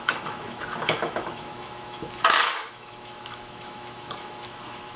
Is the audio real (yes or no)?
no